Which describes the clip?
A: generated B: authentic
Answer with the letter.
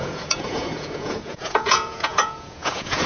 A